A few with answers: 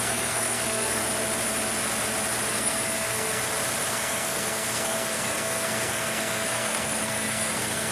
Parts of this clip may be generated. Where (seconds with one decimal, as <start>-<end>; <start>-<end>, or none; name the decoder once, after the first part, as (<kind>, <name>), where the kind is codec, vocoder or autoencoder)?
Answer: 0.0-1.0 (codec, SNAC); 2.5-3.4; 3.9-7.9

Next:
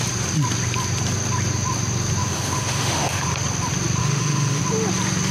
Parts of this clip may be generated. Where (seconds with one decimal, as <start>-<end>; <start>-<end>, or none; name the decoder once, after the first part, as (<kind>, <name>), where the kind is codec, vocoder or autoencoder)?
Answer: 2.2-3.3 (autoencoder, DAC-VAE); 4.0-4.6

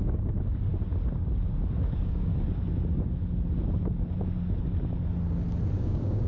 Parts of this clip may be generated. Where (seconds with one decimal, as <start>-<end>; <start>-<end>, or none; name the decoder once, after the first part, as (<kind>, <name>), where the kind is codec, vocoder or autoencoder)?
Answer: 0.0-0.7 (codec, DAC); 1.7-2.3; 5.8-6.3

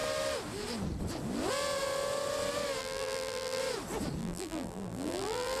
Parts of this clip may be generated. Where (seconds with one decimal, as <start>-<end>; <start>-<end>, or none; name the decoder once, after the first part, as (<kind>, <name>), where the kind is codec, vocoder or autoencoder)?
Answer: 2.8-3.6 (vocoder, BigVGAN v2); 4.2-5.6

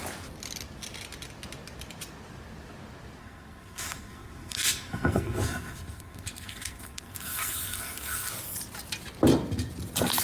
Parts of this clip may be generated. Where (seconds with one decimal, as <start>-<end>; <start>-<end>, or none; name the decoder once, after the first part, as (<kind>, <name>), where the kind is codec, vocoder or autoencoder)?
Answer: 3.2-8.3 (codec, SNAC)

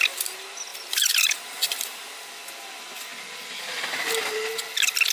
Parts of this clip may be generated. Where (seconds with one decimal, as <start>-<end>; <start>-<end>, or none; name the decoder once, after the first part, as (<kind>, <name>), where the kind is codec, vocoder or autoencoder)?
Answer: 0.7-2.3 (vocoder, BigVGAN v2)

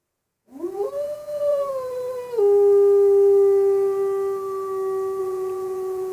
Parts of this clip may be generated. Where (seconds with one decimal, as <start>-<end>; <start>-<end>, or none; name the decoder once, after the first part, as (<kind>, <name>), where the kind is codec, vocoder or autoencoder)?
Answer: 0.0-1.7 (vocoder, Vocos); 5.2-6.1